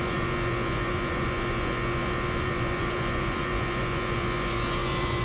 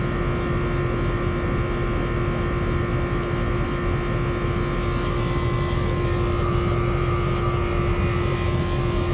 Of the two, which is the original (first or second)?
second